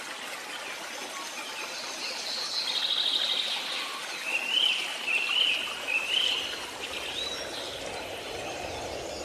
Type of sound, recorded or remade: recorded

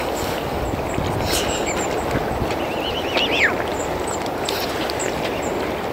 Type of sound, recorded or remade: recorded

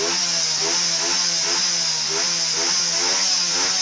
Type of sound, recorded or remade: recorded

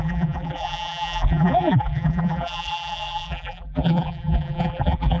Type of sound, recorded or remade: remade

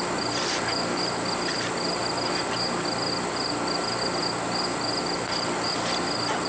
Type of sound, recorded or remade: recorded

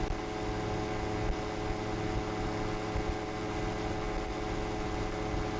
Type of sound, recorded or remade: recorded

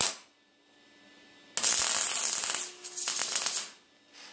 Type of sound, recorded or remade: recorded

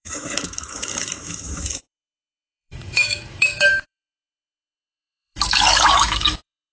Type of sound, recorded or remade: remade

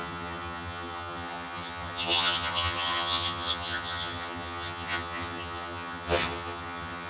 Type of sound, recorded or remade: remade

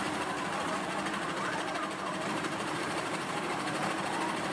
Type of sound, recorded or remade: remade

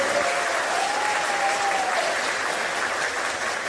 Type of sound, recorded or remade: recorded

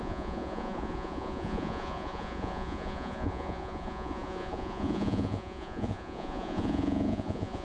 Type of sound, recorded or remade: remade